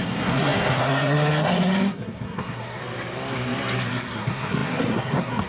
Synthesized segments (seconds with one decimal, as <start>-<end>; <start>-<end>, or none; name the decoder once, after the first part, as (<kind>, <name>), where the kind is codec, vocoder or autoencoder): 0.0-2.8 (codec, SNAC); 3.9-5.5

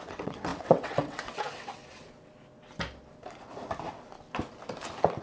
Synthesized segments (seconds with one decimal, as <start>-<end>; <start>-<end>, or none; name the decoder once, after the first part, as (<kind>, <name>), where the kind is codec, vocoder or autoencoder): 0.0-1.8 (vocoder, WaveNeXt)

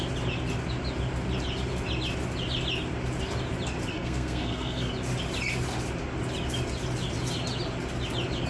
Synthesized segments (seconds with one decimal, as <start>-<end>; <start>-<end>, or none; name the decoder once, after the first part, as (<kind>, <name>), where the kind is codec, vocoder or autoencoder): 3.9-4.9 (codec, SNAC)

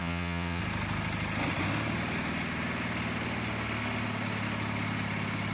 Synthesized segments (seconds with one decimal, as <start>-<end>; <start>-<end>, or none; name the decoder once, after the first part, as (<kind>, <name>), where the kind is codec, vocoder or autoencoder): 0.0-0.6 (vocoder, Vocos)